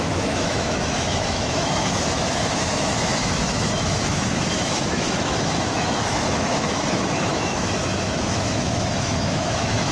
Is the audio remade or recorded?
remade